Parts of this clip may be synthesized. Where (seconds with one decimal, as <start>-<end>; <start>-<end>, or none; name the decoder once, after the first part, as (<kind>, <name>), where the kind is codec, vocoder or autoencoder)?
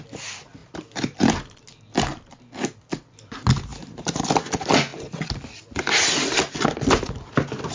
3.7-4.3 (vocoder, BigVGAN v2)